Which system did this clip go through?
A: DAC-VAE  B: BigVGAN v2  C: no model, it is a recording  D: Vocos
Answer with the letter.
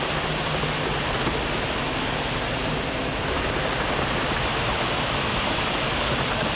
C